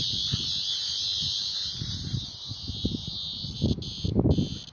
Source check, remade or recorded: recorded